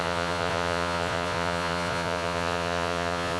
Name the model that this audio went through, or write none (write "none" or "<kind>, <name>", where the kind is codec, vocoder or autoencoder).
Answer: vocoder, Vocos